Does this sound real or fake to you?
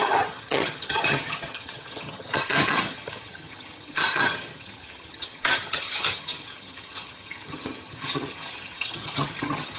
fake